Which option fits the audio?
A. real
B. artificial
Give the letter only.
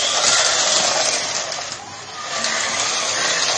A